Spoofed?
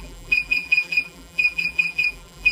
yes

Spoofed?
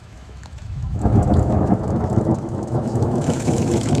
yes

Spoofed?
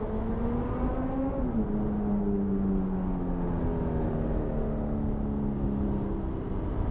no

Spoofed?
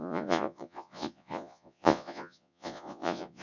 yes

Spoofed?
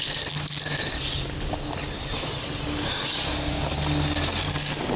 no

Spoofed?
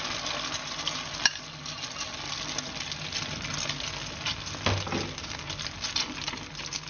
no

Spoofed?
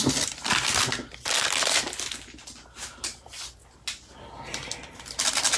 no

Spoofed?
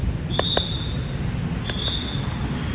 no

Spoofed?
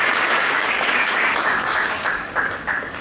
yes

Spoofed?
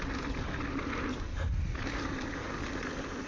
no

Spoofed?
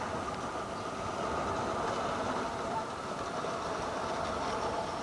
no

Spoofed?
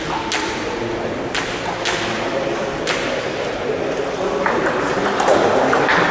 no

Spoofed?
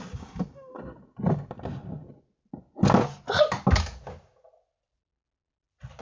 no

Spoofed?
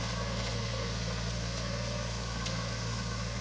yes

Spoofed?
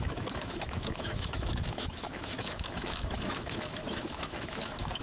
yes